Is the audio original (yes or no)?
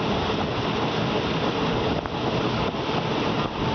yes